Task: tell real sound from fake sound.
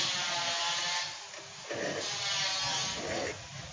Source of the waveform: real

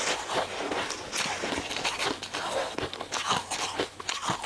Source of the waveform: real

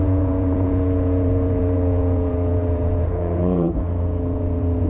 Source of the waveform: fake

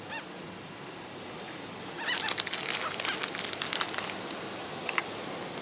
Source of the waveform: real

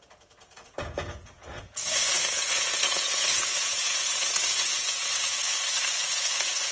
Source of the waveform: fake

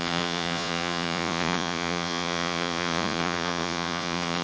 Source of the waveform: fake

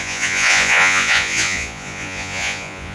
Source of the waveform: fake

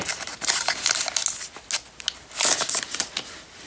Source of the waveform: real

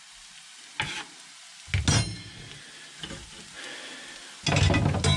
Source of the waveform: real